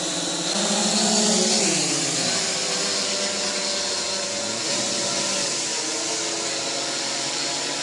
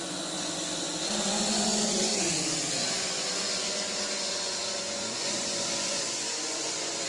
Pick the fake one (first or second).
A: second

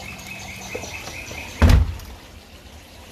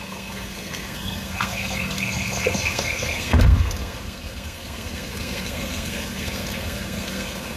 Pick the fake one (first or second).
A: second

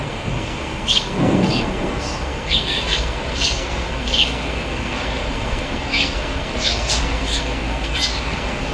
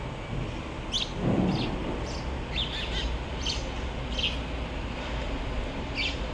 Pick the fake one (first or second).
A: first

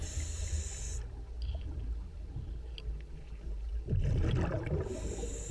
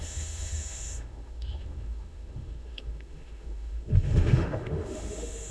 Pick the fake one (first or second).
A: second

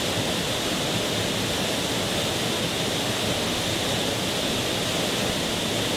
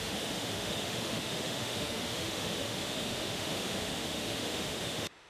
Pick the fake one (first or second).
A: second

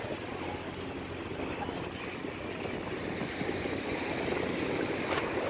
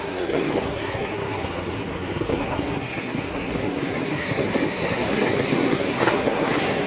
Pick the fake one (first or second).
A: second